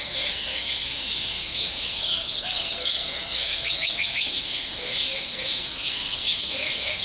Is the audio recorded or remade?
remade